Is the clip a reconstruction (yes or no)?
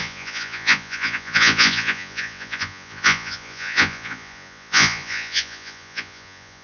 yes